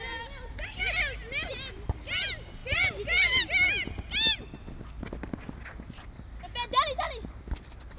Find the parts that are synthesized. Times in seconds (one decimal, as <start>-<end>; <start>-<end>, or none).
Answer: none